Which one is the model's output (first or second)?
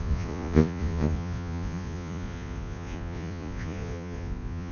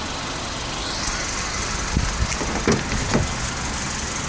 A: first